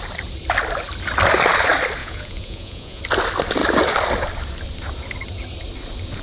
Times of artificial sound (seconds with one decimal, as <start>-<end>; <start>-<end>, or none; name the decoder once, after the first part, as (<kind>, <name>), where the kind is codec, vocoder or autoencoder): 2.0-3.0 (vocoder, Vocos)